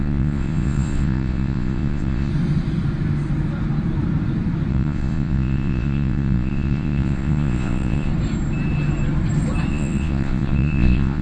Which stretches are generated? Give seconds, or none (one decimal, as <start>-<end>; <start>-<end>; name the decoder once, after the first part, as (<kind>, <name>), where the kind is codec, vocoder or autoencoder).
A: 0.0-2.3 (vocoder, Vocos); 4.7-8.1; 9.7-11.2

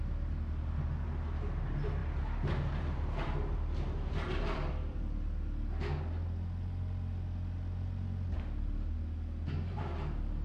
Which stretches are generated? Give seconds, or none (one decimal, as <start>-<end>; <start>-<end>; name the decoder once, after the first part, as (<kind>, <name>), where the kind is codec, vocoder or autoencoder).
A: 2.0-5.0 (vocoder, BigVGAN v2)

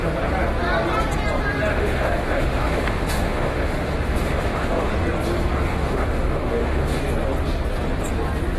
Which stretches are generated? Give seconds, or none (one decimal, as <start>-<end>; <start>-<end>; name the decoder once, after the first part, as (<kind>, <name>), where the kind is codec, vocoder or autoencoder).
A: 1.7-4.9 (autoencoder, DAC-VAE); 5.7-7.0

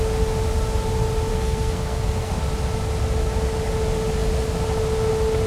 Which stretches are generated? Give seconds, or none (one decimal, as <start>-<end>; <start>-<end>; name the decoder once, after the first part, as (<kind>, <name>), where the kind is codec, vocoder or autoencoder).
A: 1.3-2.4 (codec, SNAC)

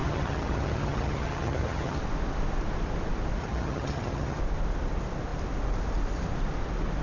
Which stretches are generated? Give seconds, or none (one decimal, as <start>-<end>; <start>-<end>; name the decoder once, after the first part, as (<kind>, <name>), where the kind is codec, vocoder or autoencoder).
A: 0.0-2.0 (vocoder, HiFi-GAN); 3.4-4.4

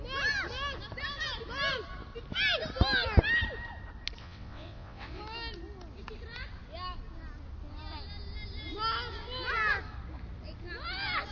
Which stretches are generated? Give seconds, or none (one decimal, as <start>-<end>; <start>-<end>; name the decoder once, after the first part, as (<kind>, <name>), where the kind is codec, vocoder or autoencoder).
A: 4.2-5.2 (vocoder, WaveNeXt)